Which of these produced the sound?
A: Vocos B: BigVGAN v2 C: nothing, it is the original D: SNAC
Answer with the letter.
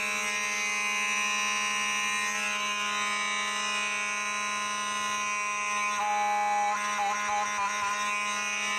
C